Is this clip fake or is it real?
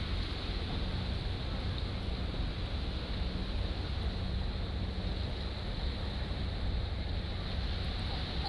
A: real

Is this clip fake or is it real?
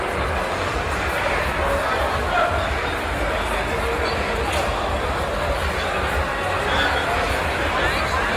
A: real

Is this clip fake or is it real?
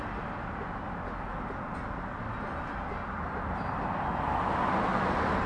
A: real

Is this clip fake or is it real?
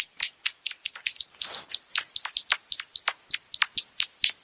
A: real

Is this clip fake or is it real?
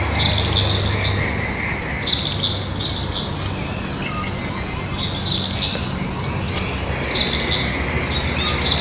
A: real